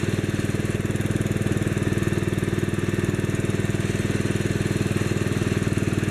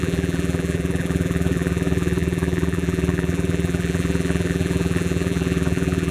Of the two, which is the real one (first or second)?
first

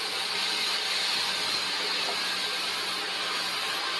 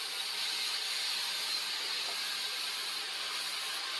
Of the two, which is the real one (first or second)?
first